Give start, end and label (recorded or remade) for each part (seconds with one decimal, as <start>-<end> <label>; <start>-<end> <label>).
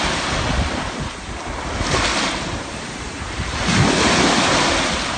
0.0-2.1 recorded; 2.1-3.6 remade; 3.6-5.2 recorded